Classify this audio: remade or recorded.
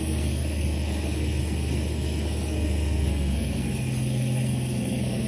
remade